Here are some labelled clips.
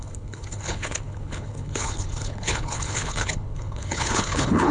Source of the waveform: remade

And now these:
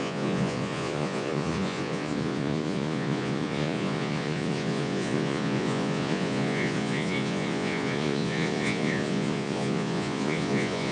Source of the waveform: remade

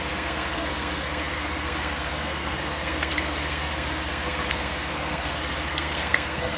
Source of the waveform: remade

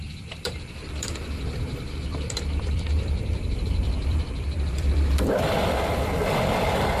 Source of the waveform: remade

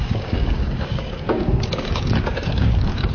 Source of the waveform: remade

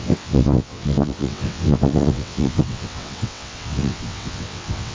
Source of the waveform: remade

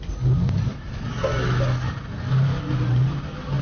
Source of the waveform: recorded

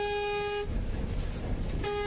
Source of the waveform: recorded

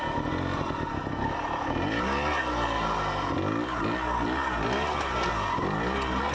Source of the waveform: recorded